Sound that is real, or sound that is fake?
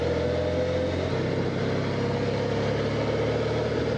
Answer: real